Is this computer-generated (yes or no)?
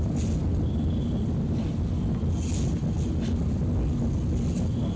no